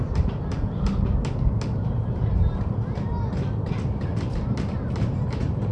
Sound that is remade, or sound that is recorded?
recorded